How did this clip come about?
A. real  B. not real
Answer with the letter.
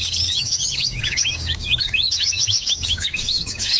B